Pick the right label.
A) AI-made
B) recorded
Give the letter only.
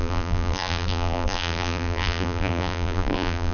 A